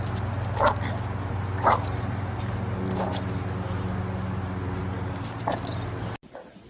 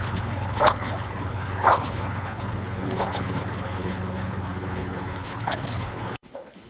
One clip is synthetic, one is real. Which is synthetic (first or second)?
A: second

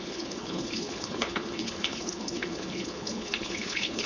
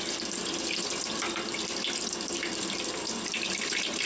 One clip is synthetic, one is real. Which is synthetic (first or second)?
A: first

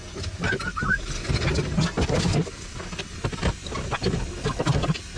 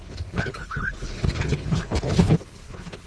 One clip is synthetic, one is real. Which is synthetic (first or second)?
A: second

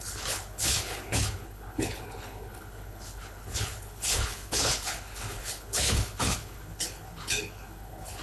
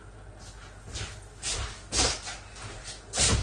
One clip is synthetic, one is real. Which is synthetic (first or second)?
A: first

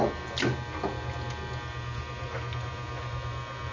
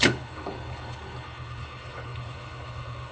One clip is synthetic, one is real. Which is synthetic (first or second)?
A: second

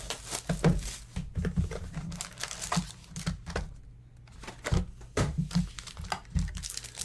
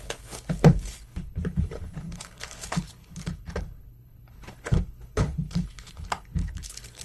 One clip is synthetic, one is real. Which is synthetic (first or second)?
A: second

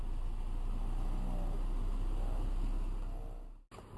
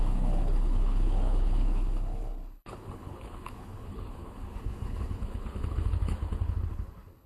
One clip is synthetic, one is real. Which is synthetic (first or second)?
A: second